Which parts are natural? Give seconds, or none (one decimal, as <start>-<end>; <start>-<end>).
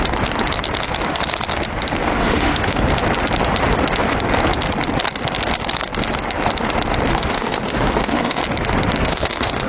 0.0-2.2; 2.8-7.1; 8.4-9.1